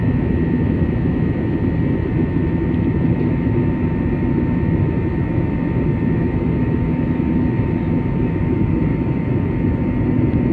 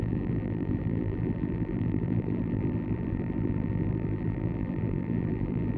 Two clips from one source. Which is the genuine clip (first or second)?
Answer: first